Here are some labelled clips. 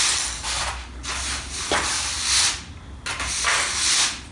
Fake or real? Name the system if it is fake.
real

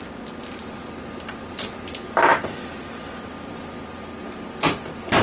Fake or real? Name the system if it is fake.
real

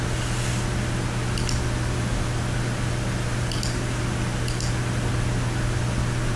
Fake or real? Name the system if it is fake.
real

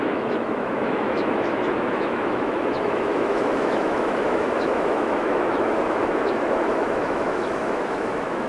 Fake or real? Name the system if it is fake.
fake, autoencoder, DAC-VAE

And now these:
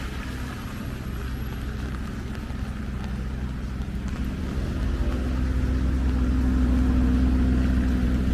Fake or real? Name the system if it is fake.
real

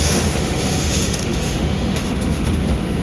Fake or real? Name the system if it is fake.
fake, autoencoder, DAC-VAE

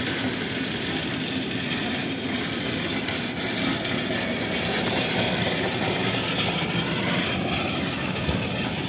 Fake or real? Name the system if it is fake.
real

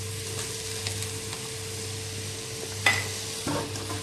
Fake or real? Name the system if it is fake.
real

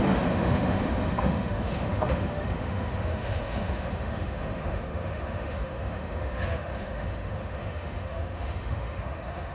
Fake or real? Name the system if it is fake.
fake, autoencoder, DAC-VAE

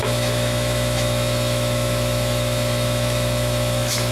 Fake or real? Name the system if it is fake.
fake, autoencoder, DAC-VAE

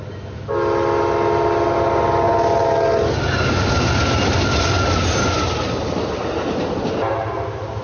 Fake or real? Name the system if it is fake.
real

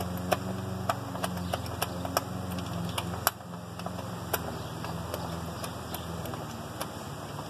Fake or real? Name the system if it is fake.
real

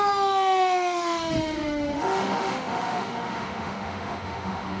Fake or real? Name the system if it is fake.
fake, autoencoder, DAC-VAE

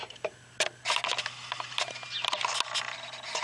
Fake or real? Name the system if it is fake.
real